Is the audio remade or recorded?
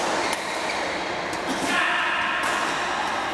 recorded